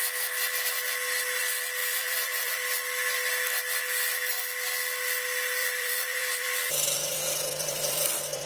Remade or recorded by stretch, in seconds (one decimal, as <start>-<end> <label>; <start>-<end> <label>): 0.0-1.8 recorded; 1.8-2.8 remade; 2.8-5.6 recorded; 5.6-8.5 remade